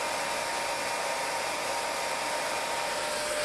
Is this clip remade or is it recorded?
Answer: recorded